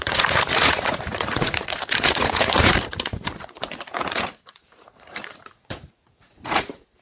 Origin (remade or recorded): remade